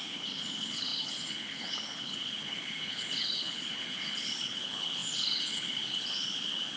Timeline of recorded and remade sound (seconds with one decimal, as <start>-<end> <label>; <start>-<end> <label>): 0.0-6.8 remade